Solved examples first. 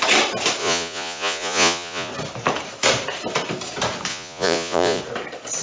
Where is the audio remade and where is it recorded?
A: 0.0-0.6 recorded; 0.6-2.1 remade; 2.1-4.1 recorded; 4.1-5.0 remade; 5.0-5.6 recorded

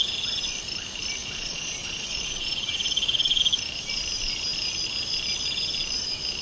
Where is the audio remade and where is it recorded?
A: 0.0-1.2 recorded; 1.2-3.4 remade; 3.4-6.4 recorded

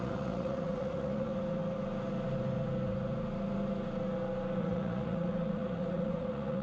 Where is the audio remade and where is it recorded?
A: 0.0-1.3 remade; 1.3-4.6 recorded; 4.6-6.6 remade

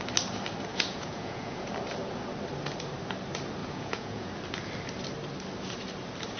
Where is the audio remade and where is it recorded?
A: 0.0-0.7 recorded; 0.7-1.7 remade; 1.7-3.6 recorded; 3.6-4.3 remade; 4.3-6.4 recorded

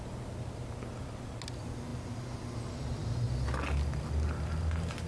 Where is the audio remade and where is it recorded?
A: 0.0-5.1 recorded